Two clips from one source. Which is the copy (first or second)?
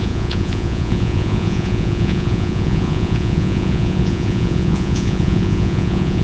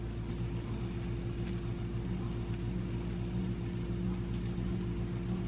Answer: first